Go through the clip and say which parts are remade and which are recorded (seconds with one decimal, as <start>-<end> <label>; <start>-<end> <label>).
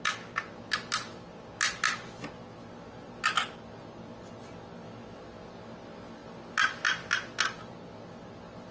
0.0-8.7 recorded